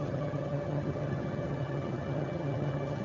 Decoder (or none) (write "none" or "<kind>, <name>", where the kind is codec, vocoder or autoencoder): vocoder, HiFi-GAN